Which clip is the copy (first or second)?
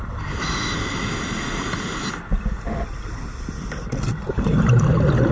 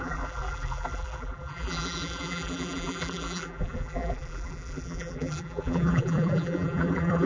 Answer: second